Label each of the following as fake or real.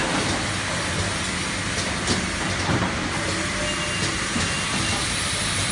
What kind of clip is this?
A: real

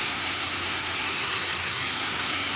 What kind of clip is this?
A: fake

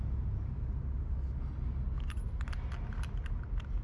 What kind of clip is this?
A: real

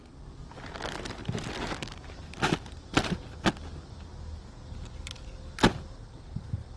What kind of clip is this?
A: real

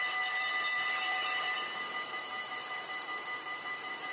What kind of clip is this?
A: fake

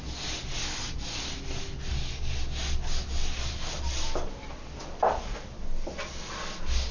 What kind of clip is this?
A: real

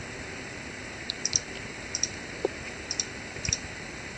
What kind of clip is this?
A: fake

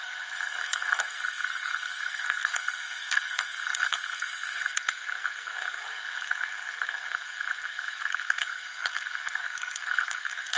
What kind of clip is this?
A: fake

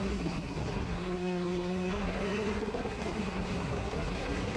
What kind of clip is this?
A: fake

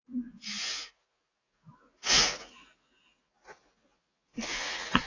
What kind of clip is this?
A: fake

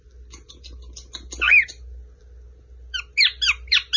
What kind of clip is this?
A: real